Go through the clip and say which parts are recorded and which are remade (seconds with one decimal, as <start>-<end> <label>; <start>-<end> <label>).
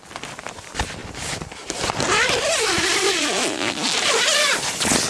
0.0-1.0 recorded; 1.0-4.1 remade; 4.1-5.1 recorded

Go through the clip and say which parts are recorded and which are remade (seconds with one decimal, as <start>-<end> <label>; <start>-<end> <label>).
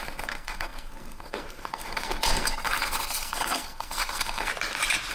0.0-4.5 remade; 4.5-5.1 recorded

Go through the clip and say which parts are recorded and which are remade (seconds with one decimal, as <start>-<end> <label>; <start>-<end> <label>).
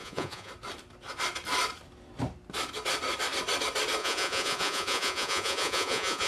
0.0-0.5 remade; 0.5-4.0 recorded; 4.0-6.3 remade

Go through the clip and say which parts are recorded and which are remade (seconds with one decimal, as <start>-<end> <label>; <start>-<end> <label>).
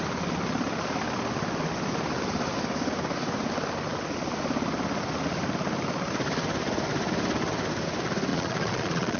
0.0-8.3 recorded; 8.3-9.2 remade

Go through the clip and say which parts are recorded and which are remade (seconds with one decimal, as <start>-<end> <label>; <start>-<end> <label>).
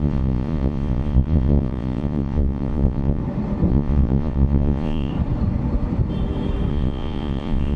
0.0-3.2 remade; 3.2-3.7 recorded; 3.7-5.1 remade; 5.1-6.7 recorded; 6.7-7.8 remade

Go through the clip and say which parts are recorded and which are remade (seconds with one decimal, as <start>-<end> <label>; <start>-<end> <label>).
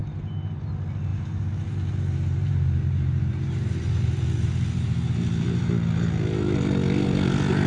0.0-0.7 remade; 0.7-1.1 recorded; 1.1-5.7 remade; 5.7-7.7 recorded